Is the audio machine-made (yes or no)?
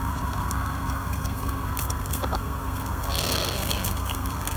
yes